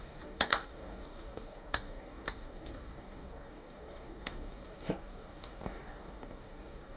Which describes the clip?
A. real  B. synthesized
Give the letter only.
B